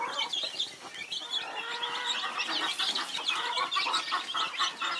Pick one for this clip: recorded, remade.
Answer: recorded